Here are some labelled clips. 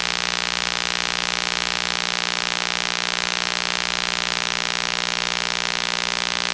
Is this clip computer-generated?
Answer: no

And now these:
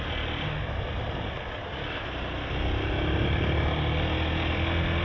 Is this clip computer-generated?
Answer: no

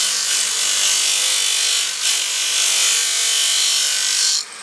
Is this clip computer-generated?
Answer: no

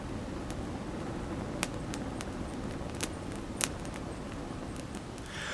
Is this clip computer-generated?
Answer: no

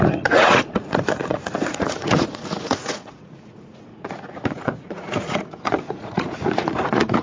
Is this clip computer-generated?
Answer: yes